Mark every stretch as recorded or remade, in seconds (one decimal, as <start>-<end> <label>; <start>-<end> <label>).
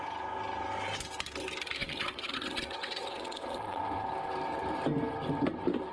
0.0-1.8 recorded; 1.8-3.8 remade; 3.8-5.9 recorded